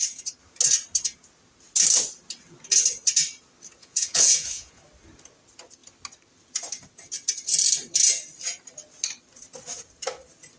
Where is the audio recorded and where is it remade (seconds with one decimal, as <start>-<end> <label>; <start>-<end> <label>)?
0.0-3.8 recorded; 3.8-4.8 remade; 4.8-10.6 recorded